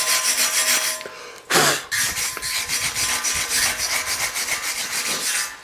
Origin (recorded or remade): recorded